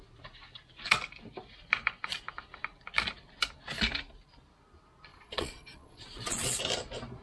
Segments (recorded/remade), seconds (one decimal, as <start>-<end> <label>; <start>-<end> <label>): 0.0-5.1 recorded; 5.1-6.6 remade; 6.6-7.2 recorded